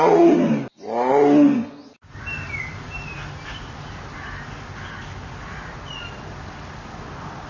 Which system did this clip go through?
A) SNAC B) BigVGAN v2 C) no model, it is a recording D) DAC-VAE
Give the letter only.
C